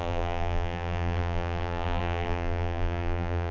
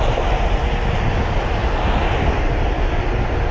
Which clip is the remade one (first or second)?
first